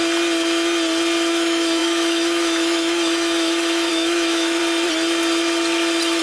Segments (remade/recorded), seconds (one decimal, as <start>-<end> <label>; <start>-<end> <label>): 0.0-1.3 recorded; 1.3-4.6 remade; 4.6-6.2 recorded